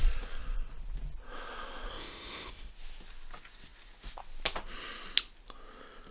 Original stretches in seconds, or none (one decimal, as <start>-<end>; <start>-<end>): 0.0-1.9; 2.7-6.1